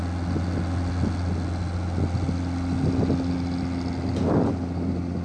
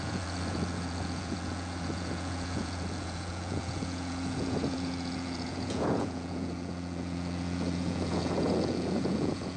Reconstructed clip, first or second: second